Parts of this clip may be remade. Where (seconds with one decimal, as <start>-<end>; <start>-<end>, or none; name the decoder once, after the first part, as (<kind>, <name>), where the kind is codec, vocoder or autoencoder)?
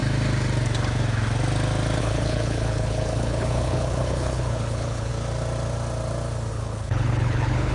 2.0-5.1 (codec, HILCodec); 6.5-7.7